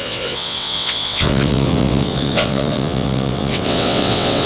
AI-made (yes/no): yes